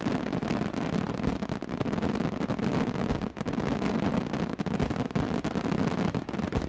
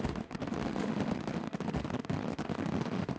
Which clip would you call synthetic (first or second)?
second